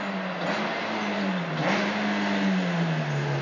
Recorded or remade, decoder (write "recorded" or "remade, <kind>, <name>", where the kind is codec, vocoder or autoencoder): recorded